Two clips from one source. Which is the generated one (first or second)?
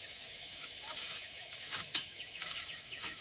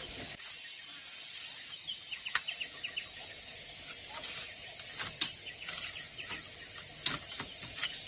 first